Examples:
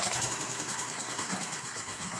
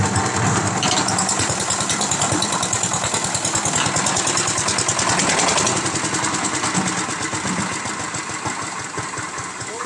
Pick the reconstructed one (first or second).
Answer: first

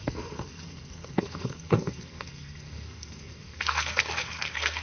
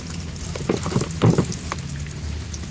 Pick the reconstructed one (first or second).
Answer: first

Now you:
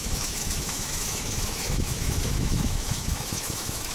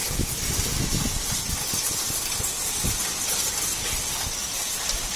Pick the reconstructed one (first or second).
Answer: first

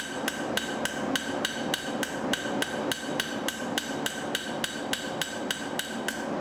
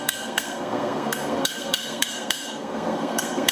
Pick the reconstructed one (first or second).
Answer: second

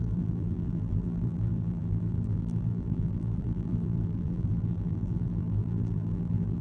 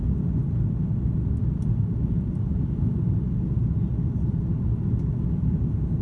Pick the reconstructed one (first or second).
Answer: first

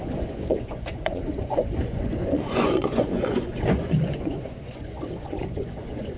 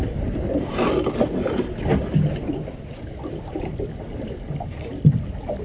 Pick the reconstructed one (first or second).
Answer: first